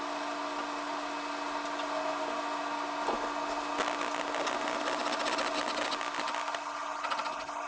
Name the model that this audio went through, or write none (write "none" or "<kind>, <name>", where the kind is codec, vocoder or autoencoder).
none